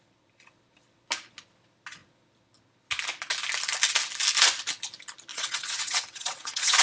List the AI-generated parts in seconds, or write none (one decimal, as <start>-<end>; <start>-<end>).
5.3-6.8